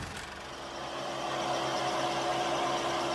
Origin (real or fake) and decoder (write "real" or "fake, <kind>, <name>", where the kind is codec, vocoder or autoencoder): real